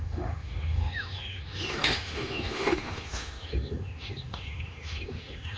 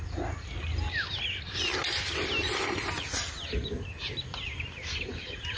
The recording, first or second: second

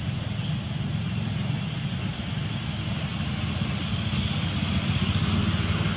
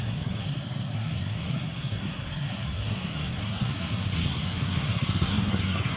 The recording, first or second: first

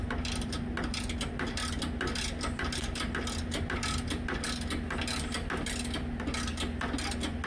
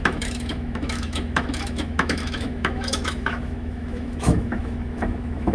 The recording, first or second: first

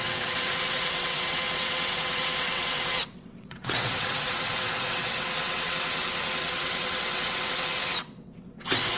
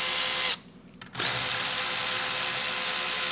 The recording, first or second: second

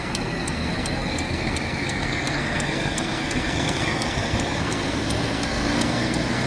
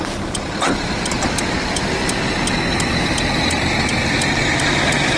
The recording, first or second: second